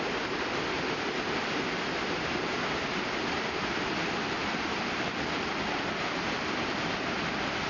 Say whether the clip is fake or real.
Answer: real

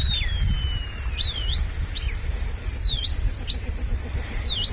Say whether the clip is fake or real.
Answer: real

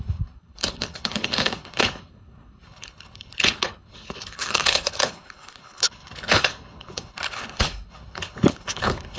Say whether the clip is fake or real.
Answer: fake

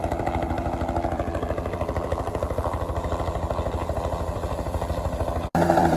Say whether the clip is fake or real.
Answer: fake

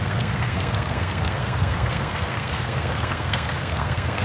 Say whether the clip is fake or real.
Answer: fake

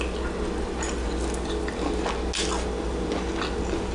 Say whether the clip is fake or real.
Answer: real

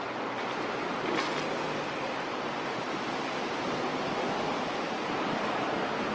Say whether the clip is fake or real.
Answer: real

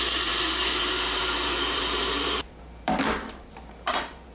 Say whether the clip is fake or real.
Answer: fake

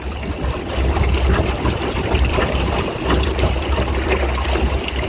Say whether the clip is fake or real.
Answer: fake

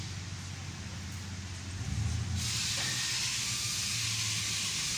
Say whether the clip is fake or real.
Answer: real